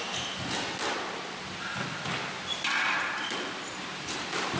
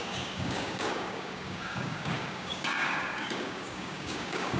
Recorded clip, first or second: first